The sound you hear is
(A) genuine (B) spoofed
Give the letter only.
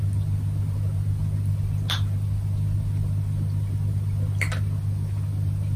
A